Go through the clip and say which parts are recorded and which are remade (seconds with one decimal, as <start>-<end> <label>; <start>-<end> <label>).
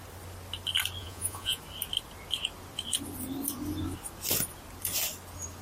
0.0-1.0 recorded; 1.0-1.6 remade; 1.6-5.6 recorded